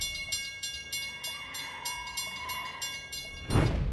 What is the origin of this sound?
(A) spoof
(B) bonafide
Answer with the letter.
B